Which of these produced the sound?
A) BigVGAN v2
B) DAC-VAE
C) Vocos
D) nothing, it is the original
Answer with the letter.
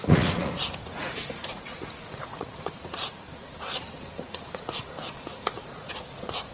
C